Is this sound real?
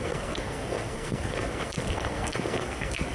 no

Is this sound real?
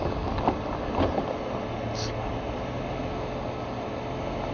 yes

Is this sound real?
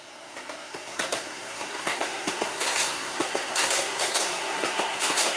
no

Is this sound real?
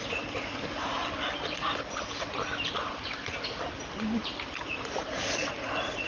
yes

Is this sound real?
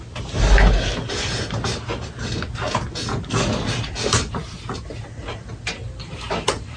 yes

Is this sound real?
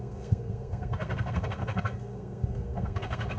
no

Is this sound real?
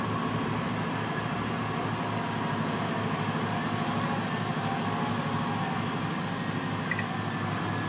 yes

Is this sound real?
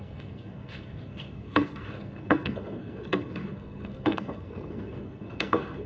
no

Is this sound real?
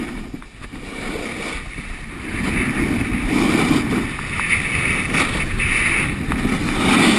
yes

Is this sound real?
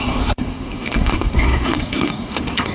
no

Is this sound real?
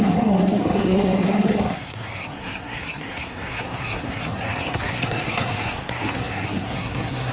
no